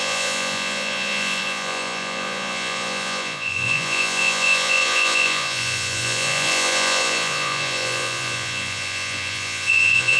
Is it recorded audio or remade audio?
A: remade